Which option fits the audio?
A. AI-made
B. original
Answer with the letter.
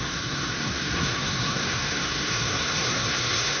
A